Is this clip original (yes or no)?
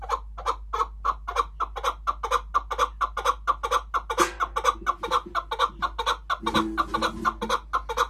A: yes